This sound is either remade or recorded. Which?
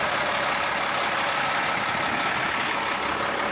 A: recorded